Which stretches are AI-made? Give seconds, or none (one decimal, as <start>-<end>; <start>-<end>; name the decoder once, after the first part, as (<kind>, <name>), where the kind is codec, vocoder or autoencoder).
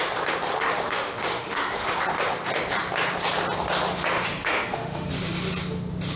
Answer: 0.5-1.9 (autoencoder, DAC-VAE); 4.4-5.1